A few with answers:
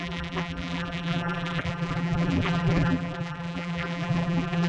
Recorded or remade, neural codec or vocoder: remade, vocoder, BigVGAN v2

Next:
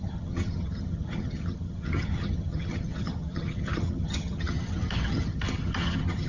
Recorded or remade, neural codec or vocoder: remade, vocoder, HiFi-GAN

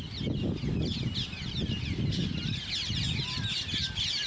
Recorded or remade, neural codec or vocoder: recorded